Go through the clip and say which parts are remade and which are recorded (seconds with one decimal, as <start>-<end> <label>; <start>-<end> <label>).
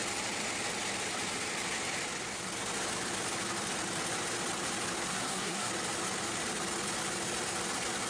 0.0-5.1 recorded; 5.1-5.7 remade; 5.7-8.1 recorded